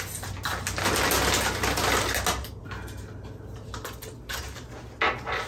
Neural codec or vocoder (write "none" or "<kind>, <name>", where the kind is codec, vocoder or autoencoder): none